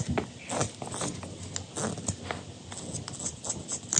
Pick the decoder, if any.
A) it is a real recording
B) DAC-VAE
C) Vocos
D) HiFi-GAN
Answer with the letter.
A